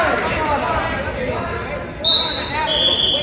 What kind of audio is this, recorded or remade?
recorded